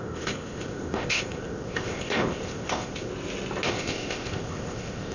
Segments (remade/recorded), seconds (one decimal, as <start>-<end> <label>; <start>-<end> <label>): 0.0-3.1 remade; 3.1-3.7 recorded; 3.7-5.1 remade